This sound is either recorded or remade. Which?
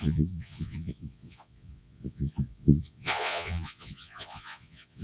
remade